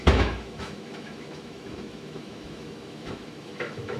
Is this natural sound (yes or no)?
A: no